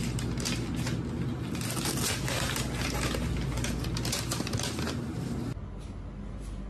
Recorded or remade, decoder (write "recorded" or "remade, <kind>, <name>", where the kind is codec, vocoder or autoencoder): recorded